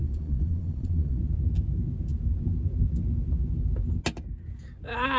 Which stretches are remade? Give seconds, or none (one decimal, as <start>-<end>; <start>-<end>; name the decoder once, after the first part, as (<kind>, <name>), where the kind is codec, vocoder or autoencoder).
0.0-1.2 (vocoder, Vocos)